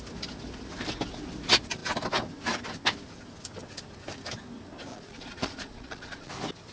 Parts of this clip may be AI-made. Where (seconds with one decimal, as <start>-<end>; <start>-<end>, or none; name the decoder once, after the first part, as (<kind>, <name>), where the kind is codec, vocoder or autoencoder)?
4.9-6.3 (vocoder, Vocos)